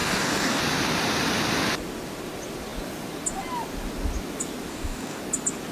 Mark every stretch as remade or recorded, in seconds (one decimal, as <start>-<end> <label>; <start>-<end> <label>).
0.0-0.6 remade; 0.6-4.7 recorded; 4.7-5.2 remade; 5.2-5.7 recorded